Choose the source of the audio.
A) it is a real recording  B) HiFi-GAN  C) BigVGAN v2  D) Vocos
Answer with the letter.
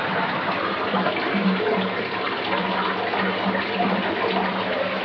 A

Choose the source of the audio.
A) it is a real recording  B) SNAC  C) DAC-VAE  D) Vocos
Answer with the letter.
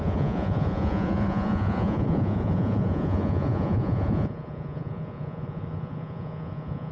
D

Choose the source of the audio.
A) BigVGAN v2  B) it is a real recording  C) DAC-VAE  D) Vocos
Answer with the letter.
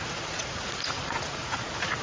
D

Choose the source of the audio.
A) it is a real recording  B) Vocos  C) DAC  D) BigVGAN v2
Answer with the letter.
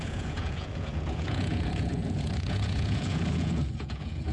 B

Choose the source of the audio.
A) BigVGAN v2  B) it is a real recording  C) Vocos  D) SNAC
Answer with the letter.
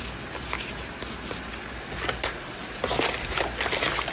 B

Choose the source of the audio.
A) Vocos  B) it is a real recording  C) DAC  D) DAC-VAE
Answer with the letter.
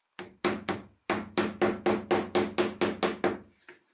B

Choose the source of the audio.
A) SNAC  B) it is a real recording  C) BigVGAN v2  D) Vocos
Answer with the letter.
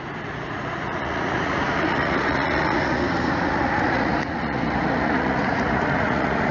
D